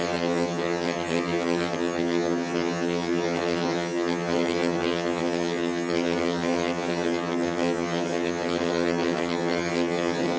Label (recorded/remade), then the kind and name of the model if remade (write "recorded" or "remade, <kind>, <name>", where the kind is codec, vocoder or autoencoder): remade, vocoder, HiFi-GAN